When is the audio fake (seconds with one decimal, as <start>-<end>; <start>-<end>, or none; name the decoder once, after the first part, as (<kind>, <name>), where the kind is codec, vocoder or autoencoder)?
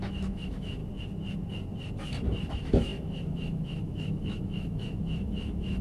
0.0-0.8 (autoencoder, DAC-VAE); 2.5-5.8